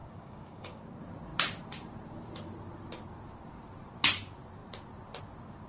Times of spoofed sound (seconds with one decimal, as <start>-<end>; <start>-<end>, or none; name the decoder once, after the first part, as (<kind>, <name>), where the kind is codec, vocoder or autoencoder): 0.0-0.8 (codec, DAC)